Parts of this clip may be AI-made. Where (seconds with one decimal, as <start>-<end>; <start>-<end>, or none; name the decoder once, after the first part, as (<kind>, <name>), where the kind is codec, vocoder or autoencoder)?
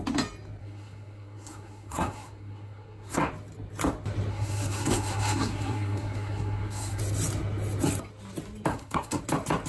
0.6-3.3 (codec, SNAC); 4.3-7.0; 8.7-9.2